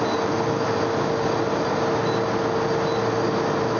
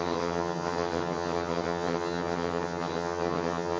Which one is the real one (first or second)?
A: first